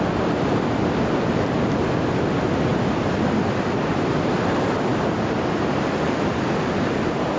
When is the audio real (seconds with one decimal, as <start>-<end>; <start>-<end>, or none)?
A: 0.0-4.9; 6.9-7.4